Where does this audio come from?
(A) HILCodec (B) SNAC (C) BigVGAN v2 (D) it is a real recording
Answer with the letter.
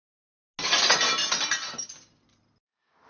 D